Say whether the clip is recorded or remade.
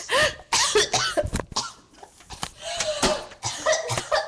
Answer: recorded